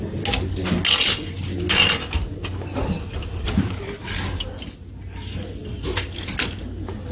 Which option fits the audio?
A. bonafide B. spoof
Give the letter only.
A